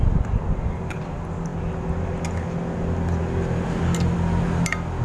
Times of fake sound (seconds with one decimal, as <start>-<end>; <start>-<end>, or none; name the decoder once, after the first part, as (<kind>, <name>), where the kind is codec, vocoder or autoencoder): none